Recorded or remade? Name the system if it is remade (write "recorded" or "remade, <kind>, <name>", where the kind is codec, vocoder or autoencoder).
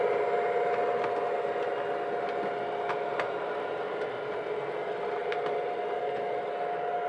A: recorded